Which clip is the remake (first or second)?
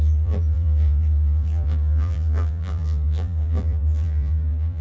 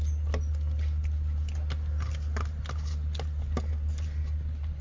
first